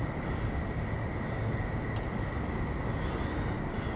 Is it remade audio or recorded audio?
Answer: recorded